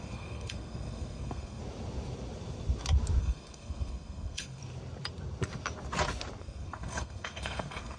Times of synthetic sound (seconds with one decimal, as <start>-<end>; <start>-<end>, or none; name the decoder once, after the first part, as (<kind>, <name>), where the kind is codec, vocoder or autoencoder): 0.0-1.6 (codec, SNAC); 3.2-4.6; 6.4-8.0